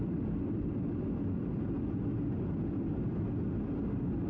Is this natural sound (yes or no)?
yes